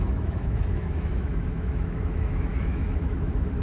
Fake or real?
fake